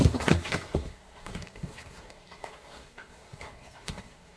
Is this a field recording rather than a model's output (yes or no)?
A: no